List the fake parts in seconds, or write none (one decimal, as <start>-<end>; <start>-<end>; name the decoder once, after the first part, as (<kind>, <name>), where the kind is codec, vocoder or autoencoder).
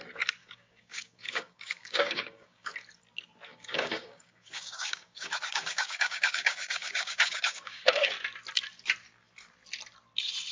0.4-2.7 (codec, DAC); 3.5-8.1